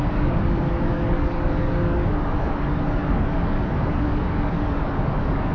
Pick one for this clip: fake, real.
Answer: fake